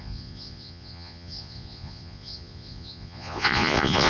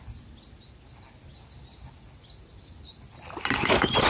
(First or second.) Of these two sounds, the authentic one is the second